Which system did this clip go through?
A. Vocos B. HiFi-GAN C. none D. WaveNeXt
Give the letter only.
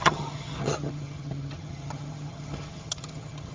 B